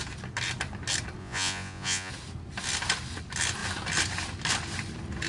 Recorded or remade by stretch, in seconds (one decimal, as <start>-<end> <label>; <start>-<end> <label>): 0.0-1.2 recorded; 1.2-2.1 remade; 2.1-5.3 recorded